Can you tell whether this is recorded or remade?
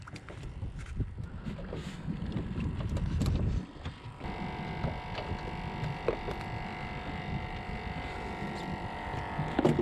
recorded